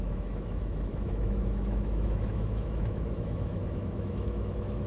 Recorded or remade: remade